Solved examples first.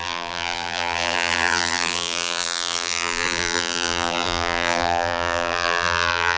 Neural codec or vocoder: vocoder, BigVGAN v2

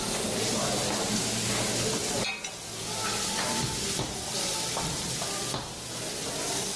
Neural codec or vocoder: none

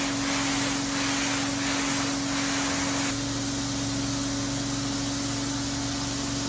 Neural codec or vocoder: none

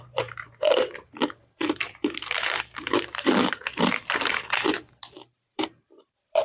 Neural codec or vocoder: vocoder, BigVGAN v2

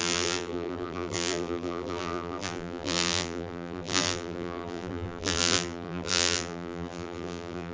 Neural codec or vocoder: vocoder, BigVGAN v2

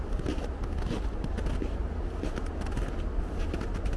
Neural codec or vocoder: none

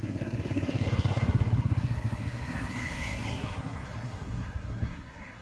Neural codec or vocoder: codec, SNAC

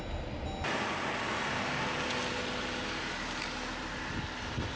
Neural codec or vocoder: none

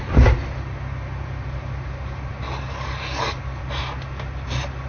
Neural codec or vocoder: none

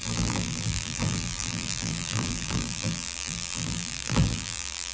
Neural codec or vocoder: vocoder, BigVGAN v2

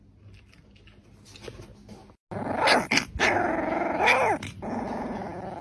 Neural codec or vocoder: none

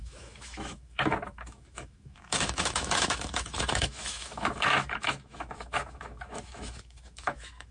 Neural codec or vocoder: autoencoder, DAC-VAE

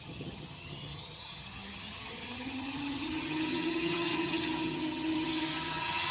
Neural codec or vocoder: vocoder, HiFi-GAN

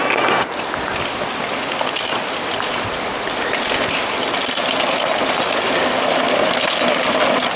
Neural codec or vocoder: none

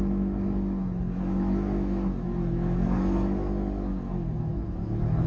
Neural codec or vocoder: autoencoder, DAC-VAE